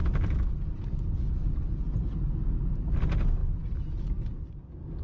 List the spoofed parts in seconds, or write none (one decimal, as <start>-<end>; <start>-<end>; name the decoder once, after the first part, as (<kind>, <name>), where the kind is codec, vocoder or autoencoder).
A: none